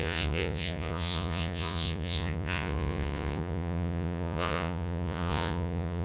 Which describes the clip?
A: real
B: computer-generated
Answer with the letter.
B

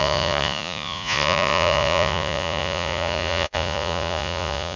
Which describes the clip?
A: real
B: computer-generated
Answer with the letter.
B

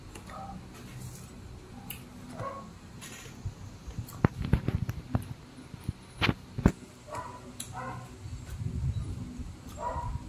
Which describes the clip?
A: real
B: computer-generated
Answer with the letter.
A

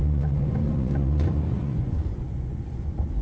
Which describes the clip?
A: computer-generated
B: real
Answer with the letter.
A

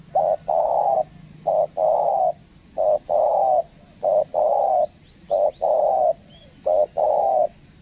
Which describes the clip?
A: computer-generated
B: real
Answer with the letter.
B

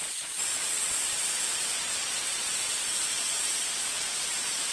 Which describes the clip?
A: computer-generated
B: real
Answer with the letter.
A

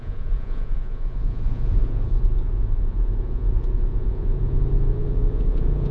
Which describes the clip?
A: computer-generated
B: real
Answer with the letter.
A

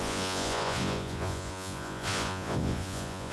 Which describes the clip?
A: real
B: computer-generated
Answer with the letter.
B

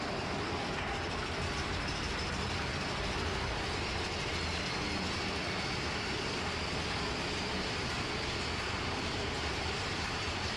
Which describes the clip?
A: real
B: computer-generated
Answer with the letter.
A